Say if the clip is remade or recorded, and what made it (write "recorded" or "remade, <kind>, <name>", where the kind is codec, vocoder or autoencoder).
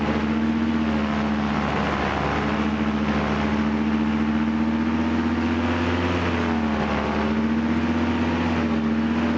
recorded